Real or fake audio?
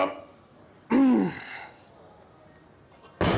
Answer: real